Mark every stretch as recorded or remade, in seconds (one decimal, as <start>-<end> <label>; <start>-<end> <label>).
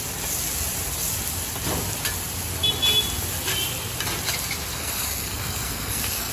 0.0-4.7 recorded; 4.7-6.3 remade